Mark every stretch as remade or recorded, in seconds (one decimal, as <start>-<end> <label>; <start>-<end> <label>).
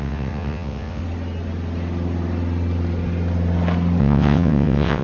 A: 0.0-1.0 remade; 1.0-4.0 recorded; 4.0-5.0 remade